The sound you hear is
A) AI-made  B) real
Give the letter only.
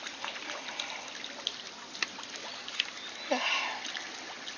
B